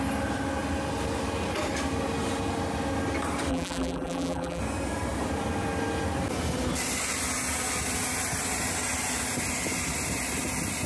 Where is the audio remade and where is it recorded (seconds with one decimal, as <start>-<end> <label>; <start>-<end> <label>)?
0.0-3.5 recorded; 3.5-4.6 remade; 4.6-10.9 recorded